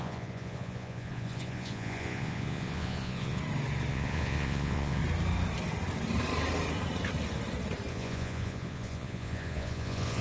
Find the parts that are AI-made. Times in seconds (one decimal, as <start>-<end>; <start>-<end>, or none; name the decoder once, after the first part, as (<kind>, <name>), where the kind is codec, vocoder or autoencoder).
0.0-3.4 (vocoder, Vocos); 3.9-5.0; 7.9-10.2